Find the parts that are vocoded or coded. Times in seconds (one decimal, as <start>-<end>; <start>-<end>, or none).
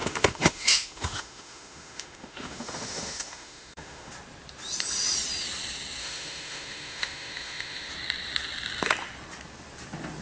0.0-4.1; 6.0-7.9